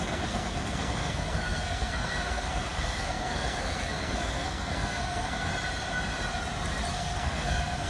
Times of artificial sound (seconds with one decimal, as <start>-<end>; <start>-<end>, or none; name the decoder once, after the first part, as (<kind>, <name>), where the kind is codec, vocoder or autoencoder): 0.0-5.5 (codec, SNAC); 6.9-7.9